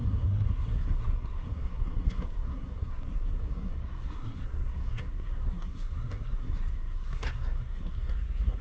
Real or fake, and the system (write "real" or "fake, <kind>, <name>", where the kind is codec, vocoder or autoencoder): fake, codec, SNAC